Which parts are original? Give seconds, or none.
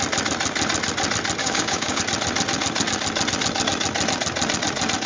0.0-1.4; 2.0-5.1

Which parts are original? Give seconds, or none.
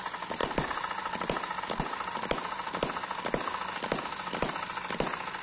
0.0-5.4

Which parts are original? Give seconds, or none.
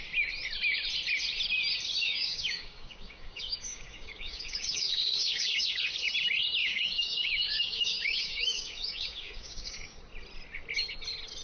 0.0-2.0; 5.7-6.6; 10.0-11.4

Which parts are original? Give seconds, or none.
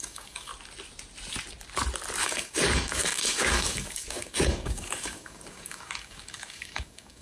0.5-2.2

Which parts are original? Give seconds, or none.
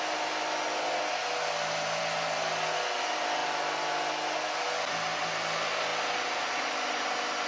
0.0-7.5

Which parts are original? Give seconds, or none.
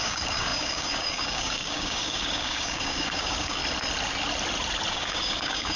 3.6-4.9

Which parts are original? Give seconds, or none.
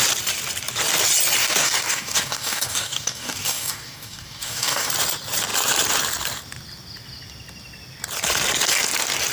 0.0-1.4; 4.9-9.3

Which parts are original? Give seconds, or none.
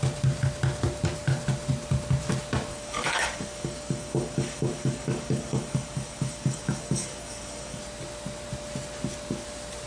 0.0-2.7; 7.8-9.9